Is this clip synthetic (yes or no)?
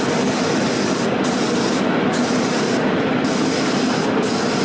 no